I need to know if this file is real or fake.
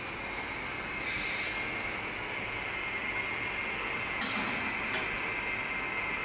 real